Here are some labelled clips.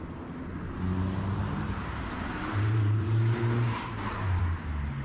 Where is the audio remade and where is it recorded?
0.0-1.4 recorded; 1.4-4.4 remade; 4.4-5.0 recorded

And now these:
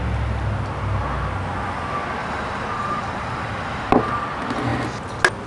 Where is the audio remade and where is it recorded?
0.0-2.2 recorded; 2.2-3.9 remade; 3.9-5.5 recorded

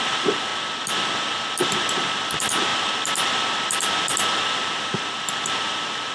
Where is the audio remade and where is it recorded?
0.0-0.5 remade; 0.5-1.6 recorded; 1.6-6.1 remade

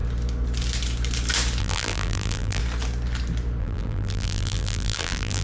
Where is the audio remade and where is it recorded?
0.0-1.6 recorded; 1.6-2.6 remade; 2.6-3.6 recorded; 3.6-5.4 remade

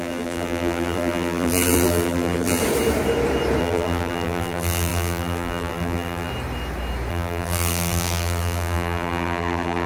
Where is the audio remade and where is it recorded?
0.0-2.6 remade; 2.6-3.6 recorded; 3.6-6.3 remade; 6.3-7.1 recorded; 7.1-9.9 remade

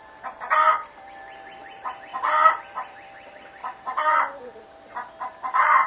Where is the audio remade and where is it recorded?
0.0-2.1 remade; 2.1-2.6 recorded; 2.6-5.9 remade

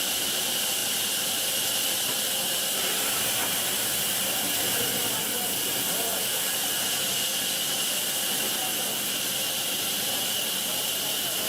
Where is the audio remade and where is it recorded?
0.0-6.1 remade; 6.1-10.6 recorded; 10.6-11.5 remade